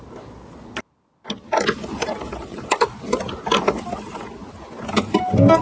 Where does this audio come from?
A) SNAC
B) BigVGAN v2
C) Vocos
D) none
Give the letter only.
D